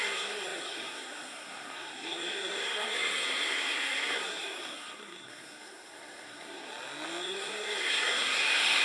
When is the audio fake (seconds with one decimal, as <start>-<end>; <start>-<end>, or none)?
0.0-6.7; 7.2-8.8